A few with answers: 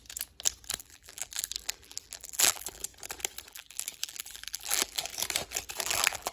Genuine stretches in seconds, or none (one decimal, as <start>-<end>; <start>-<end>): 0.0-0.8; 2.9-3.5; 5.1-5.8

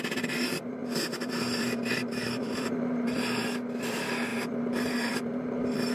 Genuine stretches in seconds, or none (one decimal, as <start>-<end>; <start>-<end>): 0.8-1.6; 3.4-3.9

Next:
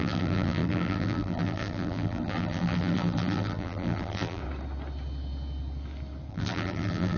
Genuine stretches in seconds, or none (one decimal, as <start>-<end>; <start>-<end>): 4.4-6.3